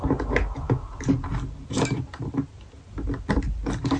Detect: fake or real real